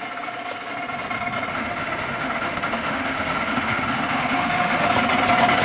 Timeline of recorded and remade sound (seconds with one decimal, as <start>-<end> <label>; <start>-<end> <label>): 0.0-1.5 recorded; 1.5-4.9 remade; 4.9-5.6 recorded